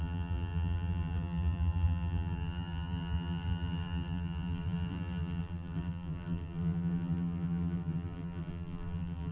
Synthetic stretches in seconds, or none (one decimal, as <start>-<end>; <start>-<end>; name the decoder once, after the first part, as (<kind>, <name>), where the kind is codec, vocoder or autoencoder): 0.0-9.3 (vocoder, BigVGAN v2)